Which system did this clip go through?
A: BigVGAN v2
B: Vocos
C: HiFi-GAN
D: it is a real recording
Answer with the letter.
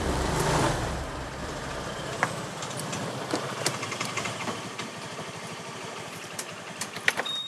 A